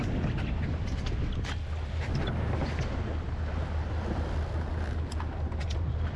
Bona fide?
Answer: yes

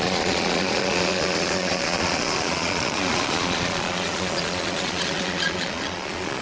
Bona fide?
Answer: no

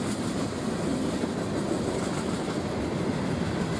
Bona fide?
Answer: yes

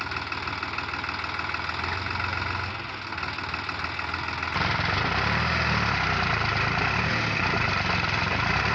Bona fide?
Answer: yes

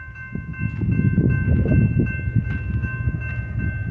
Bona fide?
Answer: yes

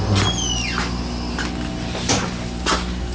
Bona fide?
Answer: yes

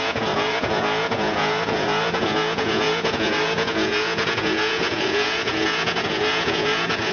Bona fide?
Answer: no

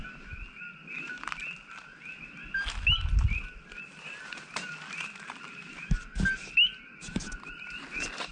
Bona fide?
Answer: yes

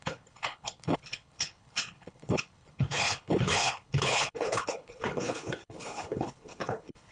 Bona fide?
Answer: no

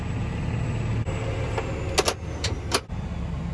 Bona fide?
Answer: yes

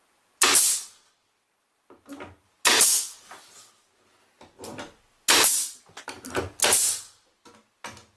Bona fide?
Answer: yes